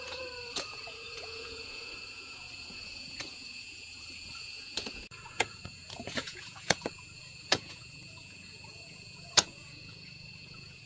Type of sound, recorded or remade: remade